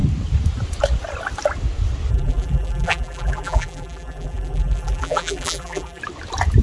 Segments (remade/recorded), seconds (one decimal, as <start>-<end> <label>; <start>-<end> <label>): 0.0-2.1 recorded; 2.1-6.0 remade; 6.0-6.6 recorded